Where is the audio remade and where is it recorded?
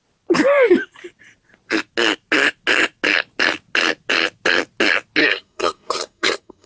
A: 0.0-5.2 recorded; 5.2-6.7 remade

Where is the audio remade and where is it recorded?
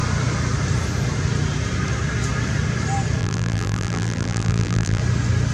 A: 0.0-3.2 recorded; 3.2-5.0 remade; 5.0-5.5 recorded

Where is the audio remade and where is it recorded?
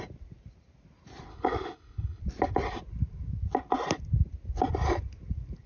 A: 0.0-1.3 recorded; 1.3-2.2 remade; 2.2-5.7 recorded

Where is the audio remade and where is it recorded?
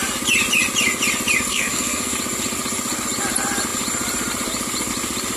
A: 0.0-1.5 recorded; 1.5-2.1 remade; 2.1-5.4 recorded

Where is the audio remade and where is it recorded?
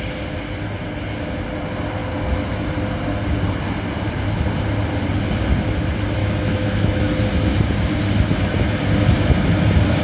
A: 0.0-6.2 recorded; 6.2-7.0 remade; 7.0-10.0 recorded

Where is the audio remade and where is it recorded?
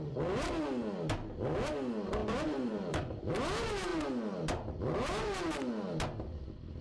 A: 0.0-2.2 recorded; 2.2-3.3 remade; 3.3-6.8 recorded